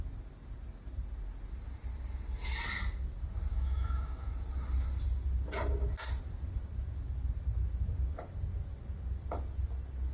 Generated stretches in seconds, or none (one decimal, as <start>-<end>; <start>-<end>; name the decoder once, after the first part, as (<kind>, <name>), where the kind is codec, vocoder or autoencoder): 3.5-4.3 (autoencoder, DAC-VAE)